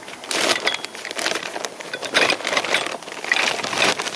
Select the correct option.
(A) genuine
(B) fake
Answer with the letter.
B